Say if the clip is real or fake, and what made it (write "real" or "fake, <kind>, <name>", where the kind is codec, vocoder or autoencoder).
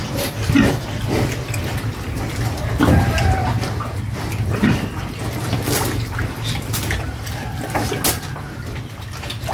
real